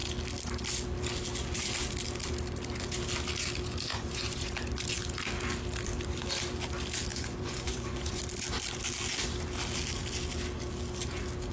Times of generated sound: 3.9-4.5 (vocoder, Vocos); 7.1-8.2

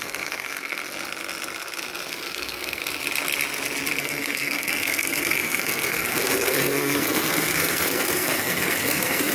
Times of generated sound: 0.0-0.8 (codec, SNAC); 2.1-2.8; 4.0-9.3

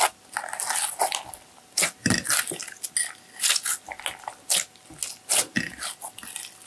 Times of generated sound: none

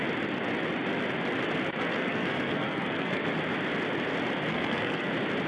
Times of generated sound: 1.9-3.2 (codec, SNAC); 4.5-5.1

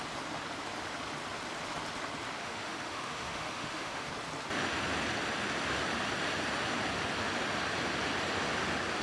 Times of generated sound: 2.4-4.1 (autoencoder, DAC-VAE)

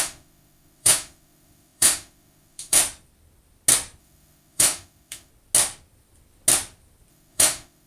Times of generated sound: 0.0-2.8 (autoencoder, DAC-VAE); 4.0-5.3; 7.1-7.9

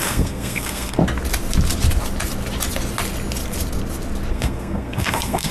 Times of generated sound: 0.0-1.0 (codec, SNAC); 4.3-5.5